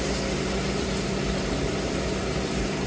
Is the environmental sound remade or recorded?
recorded